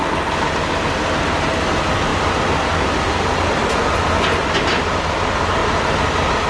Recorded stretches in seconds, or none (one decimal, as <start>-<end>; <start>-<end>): 0.0-6.5